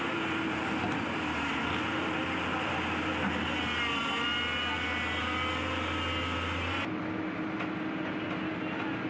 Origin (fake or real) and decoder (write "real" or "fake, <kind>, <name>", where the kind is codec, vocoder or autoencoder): real